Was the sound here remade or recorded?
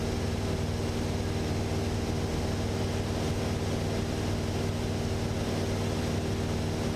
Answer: recorded